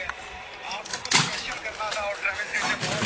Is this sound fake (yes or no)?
no